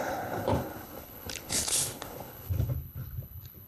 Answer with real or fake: fake